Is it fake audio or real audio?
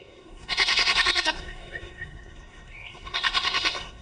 fake